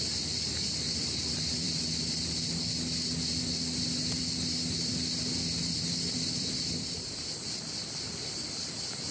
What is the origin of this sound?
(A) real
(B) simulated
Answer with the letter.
B